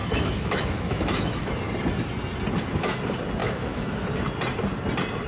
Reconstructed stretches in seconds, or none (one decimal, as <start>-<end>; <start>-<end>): 0.0-1.5; 3.4-3.9